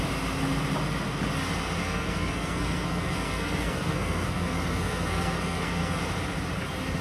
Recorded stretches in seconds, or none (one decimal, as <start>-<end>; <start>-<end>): 0.0-1.8; 6.0-7.0